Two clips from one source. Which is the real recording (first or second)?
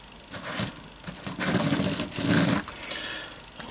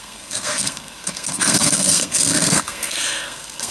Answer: first